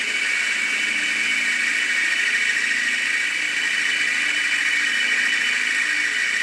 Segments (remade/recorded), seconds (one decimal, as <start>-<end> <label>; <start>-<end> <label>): 0.0-6.4 recorded